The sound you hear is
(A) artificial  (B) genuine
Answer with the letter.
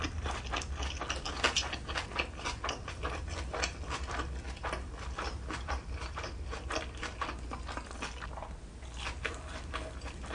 B